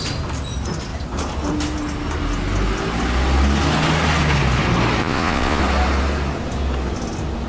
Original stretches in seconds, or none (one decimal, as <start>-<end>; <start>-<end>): 0.0-5.0; 5.6-7.5

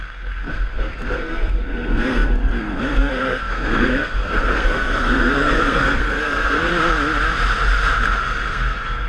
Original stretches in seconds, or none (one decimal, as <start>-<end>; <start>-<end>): 6.7-8.2

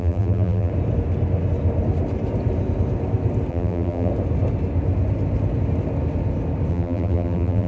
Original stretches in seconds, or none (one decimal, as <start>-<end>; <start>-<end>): 0.7-3.5; 4.1-6.7

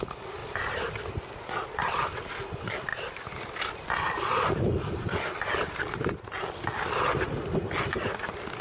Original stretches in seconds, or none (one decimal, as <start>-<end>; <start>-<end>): 0.0-8.6

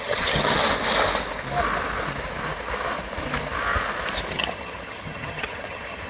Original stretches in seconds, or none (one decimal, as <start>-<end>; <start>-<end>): 0.6-4.3

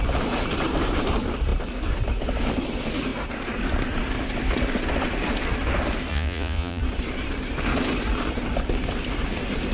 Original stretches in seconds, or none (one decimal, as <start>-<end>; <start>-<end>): 0.0-6.1; 6.8-9.7

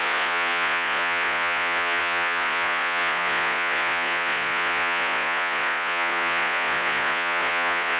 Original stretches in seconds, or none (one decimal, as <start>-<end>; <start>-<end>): none

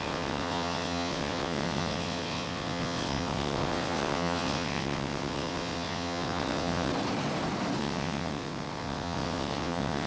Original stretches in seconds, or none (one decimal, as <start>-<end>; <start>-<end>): 6.9-7.8